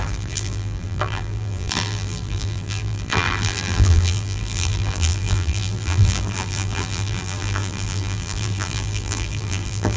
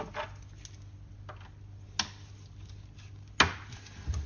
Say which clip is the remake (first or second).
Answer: first